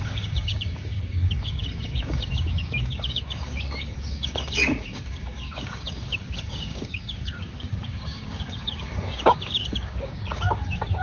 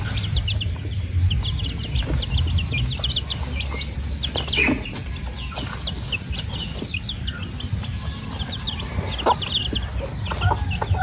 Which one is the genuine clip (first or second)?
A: second